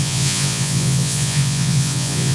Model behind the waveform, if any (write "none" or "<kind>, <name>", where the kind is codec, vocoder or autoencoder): vocoder, Vocos